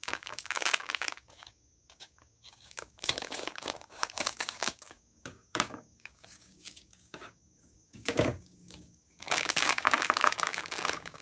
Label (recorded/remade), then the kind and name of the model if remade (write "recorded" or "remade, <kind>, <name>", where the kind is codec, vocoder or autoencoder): remade, codec, DAC